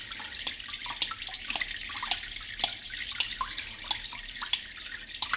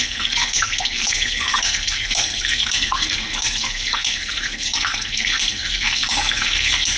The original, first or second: first